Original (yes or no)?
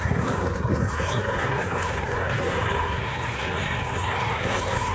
no